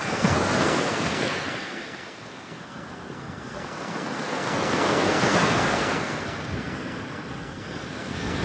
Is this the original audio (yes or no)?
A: no